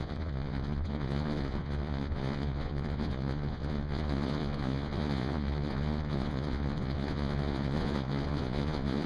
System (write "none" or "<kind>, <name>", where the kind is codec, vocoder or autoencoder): vocoder, Vocos